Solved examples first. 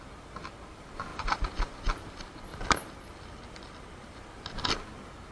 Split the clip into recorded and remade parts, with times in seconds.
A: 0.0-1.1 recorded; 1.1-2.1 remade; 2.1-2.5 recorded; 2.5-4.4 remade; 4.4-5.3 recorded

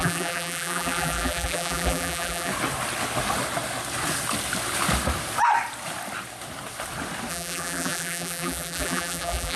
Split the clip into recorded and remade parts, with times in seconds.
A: 0.0-2.5 remade; 2.5-7.3 recorded; 7.3-9.6 remade

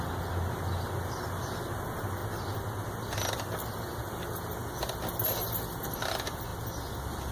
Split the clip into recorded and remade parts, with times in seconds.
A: 0.0-7.3 recorded

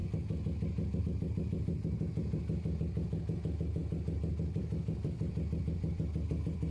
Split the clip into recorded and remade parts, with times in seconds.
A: 0.0-1.0 recorded; 1.0-6.7 remade

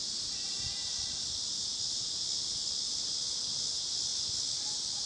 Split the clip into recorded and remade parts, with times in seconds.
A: 0.0-5.1 recorded

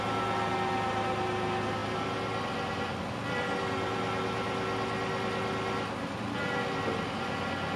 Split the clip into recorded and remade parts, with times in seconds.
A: 0.0-7.8 recorded

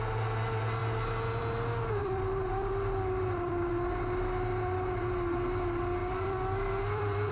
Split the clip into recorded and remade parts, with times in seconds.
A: 0.0-2.0 recorded; 2.0-3.7 remade; 3.7-6.0 recorded; 6.0-7.3 remade